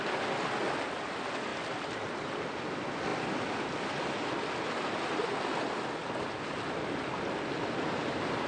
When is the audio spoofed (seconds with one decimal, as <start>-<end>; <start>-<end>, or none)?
none